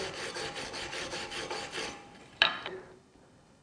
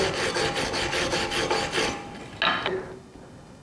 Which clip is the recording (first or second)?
second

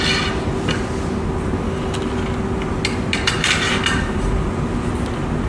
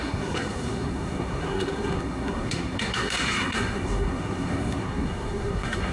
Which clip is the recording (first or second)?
first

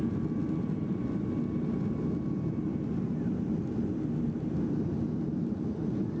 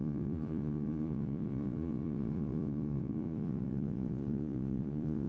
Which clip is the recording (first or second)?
first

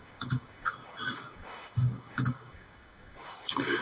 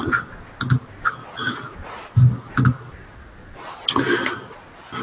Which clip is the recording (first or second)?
second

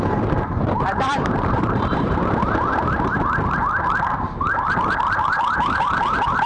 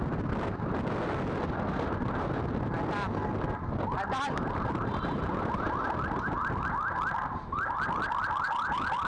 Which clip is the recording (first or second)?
second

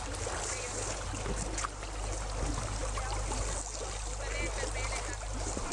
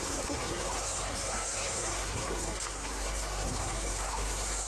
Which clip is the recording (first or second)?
first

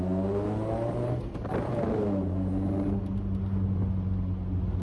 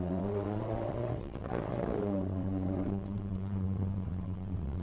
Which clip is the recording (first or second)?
first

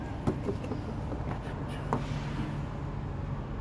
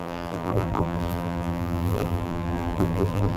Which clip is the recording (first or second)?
first